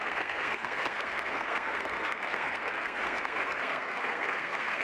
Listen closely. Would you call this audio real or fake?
fake